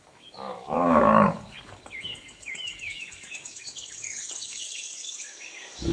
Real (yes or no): no